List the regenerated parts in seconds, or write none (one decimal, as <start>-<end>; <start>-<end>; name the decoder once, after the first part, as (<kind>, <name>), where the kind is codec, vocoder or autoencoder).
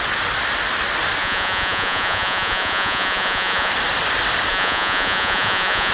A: 1.2-3.7 (vocoder, Vocos); 4.5-5.9